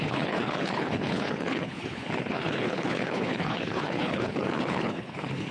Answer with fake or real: fake